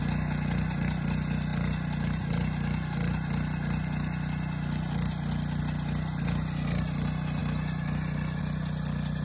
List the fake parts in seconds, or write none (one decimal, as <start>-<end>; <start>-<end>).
none

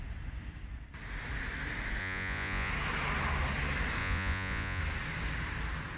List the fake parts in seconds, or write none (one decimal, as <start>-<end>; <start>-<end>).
2.0-2.7; 4.0-4.8

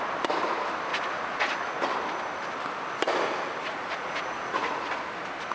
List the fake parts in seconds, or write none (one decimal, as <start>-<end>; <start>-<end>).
0.9-1.9; 3.6-4.9

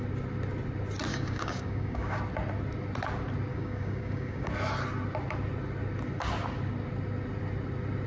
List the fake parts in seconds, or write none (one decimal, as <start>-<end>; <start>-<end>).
1.1-2.2; 3.5-4.5

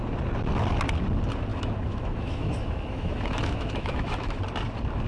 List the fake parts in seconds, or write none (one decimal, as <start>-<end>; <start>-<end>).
1.5-4.4